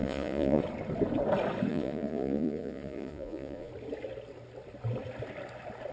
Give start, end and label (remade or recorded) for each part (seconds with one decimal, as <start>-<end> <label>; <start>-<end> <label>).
0.0-0.6 remade; 0.6-1.7 recorded; 1.7-3.7 remade; 3.7-5.9 recorded